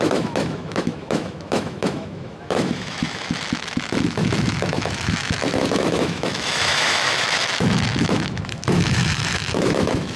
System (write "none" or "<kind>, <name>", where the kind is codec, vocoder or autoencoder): autoencoder, DAC-VAE